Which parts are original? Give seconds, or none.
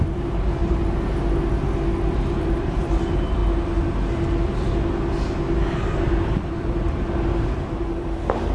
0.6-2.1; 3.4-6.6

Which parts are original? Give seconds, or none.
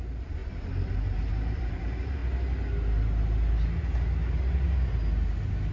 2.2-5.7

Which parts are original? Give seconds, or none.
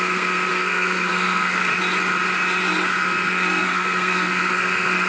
1.7-2.9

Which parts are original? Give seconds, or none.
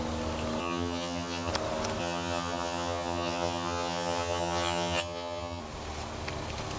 0.0-0.6; 1.5-2.0; 5.6-6.8